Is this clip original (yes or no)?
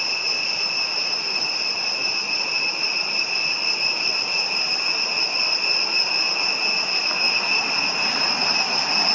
yes